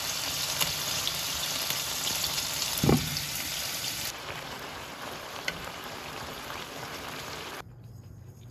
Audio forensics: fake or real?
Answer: fake